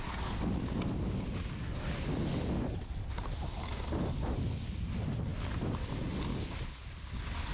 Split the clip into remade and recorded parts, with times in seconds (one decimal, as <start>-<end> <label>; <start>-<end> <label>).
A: 0.0-7.5 recorded